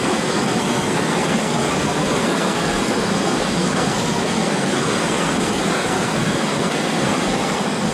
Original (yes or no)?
no